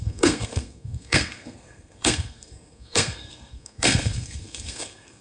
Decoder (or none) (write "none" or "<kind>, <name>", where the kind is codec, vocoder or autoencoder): codec, SNAC